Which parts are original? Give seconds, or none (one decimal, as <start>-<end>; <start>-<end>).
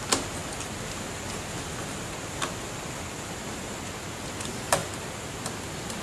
0.0-4.8